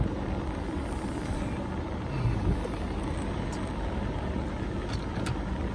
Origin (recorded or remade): recorded